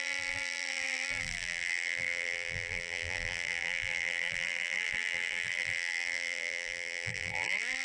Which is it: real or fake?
fake